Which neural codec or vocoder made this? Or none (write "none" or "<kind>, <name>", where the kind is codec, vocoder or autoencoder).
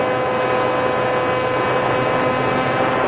none